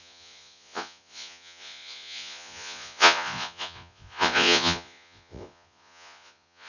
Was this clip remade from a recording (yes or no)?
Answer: yes